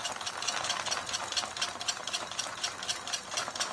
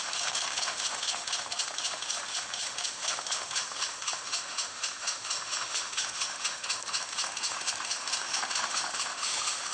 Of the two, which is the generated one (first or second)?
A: second